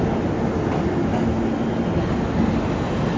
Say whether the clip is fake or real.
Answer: real